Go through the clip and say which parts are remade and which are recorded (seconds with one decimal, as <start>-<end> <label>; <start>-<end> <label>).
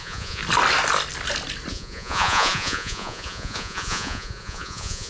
0.0-0.4 remade; 0.4-1.7 recorded; 1.7-5.1 remade